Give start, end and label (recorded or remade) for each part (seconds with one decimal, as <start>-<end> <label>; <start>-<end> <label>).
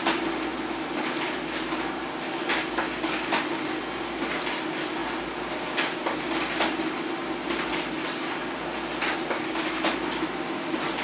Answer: 0.0-11.0 recorded